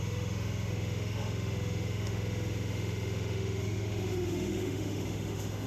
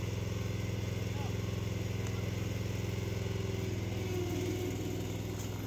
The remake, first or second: first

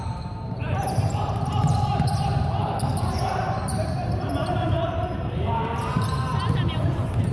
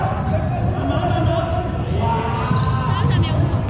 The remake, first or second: first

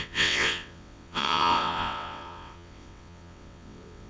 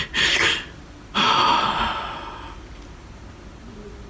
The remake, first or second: first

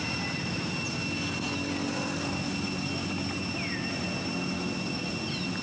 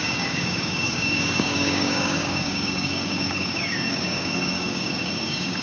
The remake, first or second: second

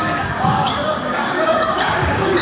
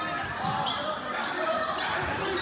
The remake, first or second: first